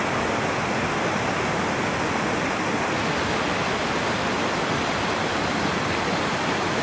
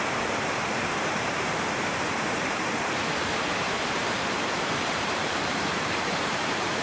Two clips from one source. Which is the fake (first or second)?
second